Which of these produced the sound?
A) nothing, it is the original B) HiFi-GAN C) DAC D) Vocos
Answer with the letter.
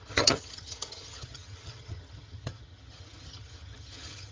B